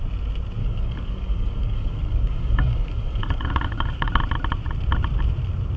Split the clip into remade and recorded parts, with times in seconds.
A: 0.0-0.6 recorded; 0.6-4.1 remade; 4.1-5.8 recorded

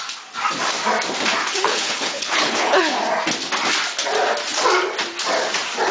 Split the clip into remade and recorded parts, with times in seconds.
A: 0.0-1.4 recorded; 1.4-2.8 remade; 2.8-5.9 recorded

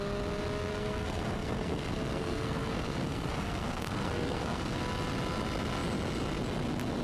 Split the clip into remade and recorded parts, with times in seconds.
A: 0.0-0.7 recorded; 0.7-4.8 remade; 4.8-7.0 recorded

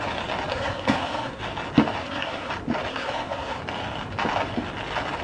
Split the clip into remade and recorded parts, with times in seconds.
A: 0.0-0.5 recorded; 0.5-1.4 remade; 1.4-2.0 recorded; 2.0-2.5 remade; 2.5-2.9 recorded; 2.9-3.6 remade; 3.6-5.2 recorded

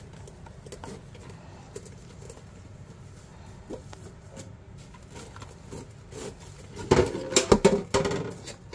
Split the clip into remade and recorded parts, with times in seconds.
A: 0.0-8.7 recorded

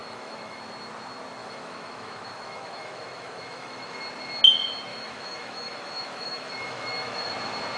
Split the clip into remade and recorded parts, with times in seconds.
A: 0.0-0.6 remade; 0.6-1.4 recorded; 1.4-4.0 remade; 4.0-4.9 recorded; 4.9-7.3 remade; 7.3-7.8 recorded

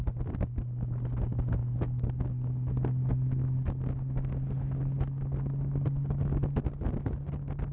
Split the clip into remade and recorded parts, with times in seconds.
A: 0.0-7.7 recorded